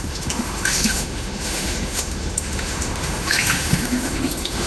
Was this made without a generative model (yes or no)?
no